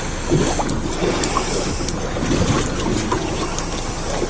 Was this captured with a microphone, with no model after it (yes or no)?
yes